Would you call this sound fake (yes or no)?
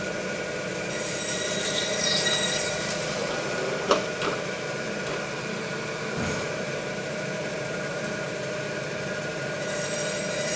yes